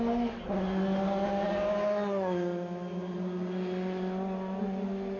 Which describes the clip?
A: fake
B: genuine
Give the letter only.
B